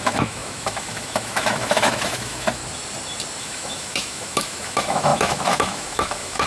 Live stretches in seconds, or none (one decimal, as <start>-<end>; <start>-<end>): 2.6-3.4